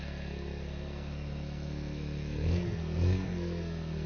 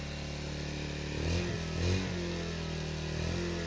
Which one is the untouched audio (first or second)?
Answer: second